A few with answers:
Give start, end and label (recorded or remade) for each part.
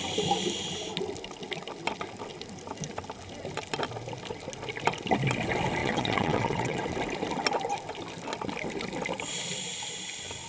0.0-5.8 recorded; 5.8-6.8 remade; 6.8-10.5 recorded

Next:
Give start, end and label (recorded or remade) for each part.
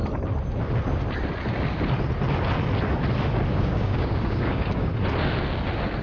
0.0-3.5 recorded; 3.5-4.9 remade; 4.9-6.0 recorded